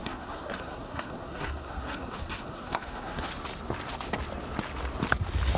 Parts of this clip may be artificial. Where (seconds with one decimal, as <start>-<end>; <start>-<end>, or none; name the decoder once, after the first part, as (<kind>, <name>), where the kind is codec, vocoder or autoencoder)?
0.0-3.3 (codec, SNAC)